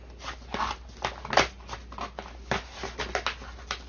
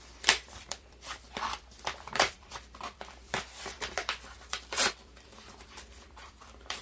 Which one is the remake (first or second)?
second